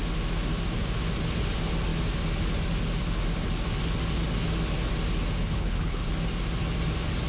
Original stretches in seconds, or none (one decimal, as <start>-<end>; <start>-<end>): 0.0-5.4; 6.1-7.3